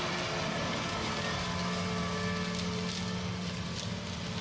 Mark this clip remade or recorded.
recorded